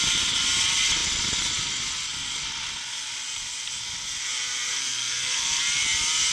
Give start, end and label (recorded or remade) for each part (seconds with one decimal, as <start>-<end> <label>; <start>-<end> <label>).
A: 0.0-4.7 recorded; 4.7-5.6 remade; 5.6-6.3 recorded